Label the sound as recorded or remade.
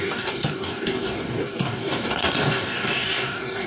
remade